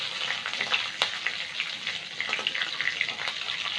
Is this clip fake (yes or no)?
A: no